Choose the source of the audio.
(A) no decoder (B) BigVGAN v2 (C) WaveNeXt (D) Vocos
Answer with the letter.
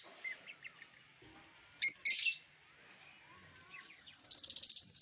A